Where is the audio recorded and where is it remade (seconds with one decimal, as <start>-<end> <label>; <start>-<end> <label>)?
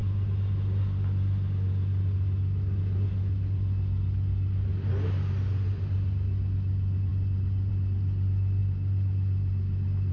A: 0.0-10.1 recorded